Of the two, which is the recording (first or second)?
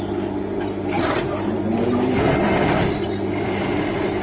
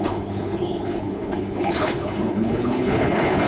first